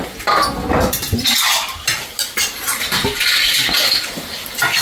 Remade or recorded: recorded